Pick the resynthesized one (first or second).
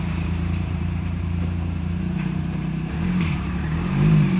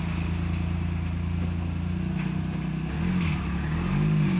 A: first